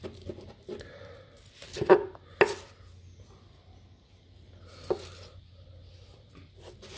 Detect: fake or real real